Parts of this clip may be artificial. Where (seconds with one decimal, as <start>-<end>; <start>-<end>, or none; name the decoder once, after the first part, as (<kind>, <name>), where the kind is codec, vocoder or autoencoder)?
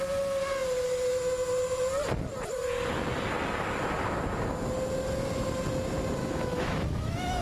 6.2-7.4 (autoencoder, DAC-VAE)